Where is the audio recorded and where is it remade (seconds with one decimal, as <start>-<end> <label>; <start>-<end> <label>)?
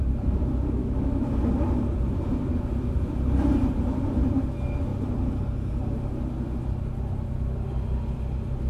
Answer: 0.0-0.8 recorded; 0.8-1.3 remade; 1.3-8.7 recorded